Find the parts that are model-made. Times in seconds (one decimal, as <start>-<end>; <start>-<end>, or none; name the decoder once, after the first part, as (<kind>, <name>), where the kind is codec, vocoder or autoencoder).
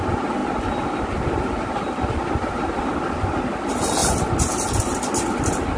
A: none